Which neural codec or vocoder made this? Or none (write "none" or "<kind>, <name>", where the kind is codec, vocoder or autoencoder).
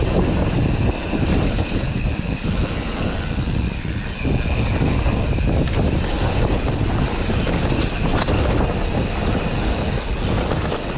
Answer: none